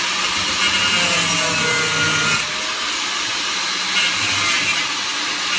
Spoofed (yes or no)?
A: no